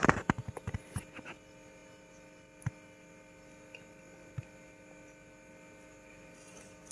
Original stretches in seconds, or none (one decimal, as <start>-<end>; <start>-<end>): 0.0-6.9